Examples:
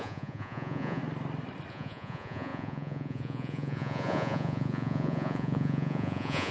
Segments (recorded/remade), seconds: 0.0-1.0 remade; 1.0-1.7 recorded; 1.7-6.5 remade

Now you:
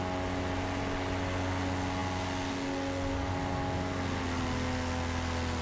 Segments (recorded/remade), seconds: 0.0-5.6 recorded